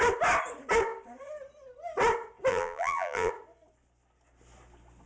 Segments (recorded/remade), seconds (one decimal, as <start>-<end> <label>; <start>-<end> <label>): 0.0-2.5 recorded; 2.5-3.3 remade; 3.3-5.1 recorded